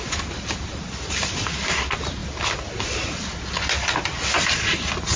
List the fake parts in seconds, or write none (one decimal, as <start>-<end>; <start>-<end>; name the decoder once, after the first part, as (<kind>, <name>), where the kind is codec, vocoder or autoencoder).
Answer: none